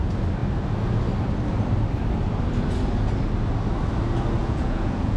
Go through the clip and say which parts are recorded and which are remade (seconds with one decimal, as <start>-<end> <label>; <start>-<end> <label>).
0.0-4.4 recorded; 4.4-5.2 remade